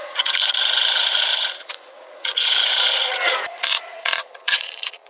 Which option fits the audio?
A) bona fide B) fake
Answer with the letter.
B